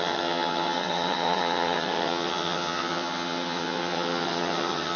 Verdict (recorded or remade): remade